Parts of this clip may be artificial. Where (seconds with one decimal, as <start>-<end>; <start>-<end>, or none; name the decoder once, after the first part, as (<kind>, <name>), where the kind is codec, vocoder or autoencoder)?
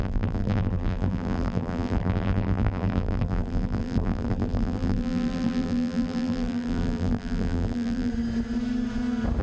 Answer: 0.0-8.1 (vocoder, BigVGAN v2)